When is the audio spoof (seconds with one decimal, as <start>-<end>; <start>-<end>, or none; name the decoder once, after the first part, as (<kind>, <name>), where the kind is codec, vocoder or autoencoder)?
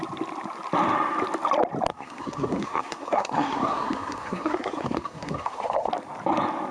1.9-5.9 (codec, SNAC)